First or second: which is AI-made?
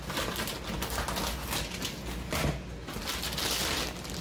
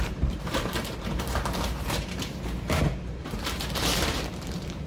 second